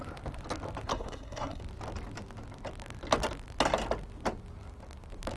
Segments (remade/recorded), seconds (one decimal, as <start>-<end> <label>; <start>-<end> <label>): 0.0-0.9 recorded; 0.9-1.6 remade; 1.6-5.4 recorded